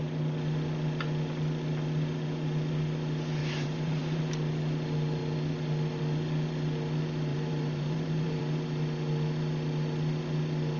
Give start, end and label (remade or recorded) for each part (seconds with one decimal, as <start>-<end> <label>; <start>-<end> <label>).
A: 0.0-3.4 recorded; 3.4-4.2 remade; 4.2-7.3 recorded; 7.3-8.4 remade; 8.4-10.8 recorded

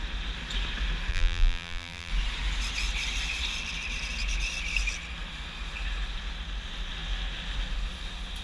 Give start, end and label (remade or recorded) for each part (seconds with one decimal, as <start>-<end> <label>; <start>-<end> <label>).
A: 0.0-1.1 recorded; 1.1-2.1 remade; 2.1-8.4 recorded

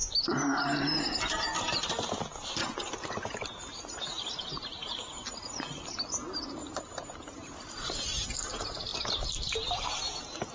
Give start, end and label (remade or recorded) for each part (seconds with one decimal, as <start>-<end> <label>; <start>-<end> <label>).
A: 0.0-5.2 remade; 5.2-6.8 recorded; 6.8-10.5 remade